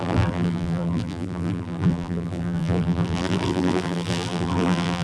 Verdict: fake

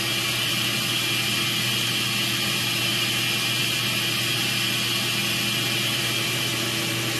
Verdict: real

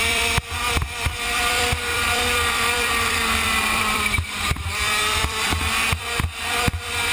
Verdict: fake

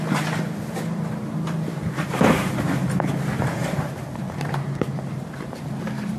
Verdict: fake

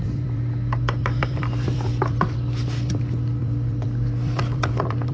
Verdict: fake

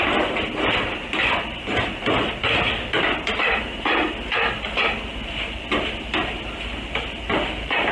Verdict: real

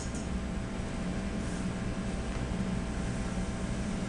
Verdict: real